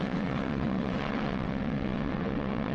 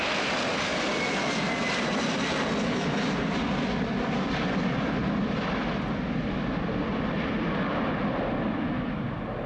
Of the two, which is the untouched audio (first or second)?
second